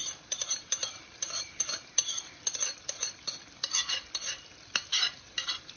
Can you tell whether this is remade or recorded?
recorded